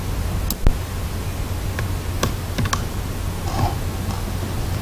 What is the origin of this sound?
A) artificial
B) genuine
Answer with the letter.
B